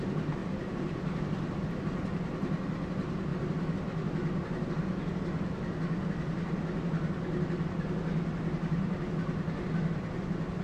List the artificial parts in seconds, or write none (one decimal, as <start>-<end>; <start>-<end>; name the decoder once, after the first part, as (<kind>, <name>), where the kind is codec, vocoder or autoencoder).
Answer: none